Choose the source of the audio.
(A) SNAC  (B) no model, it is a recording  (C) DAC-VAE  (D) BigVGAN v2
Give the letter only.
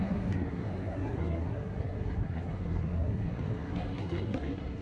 A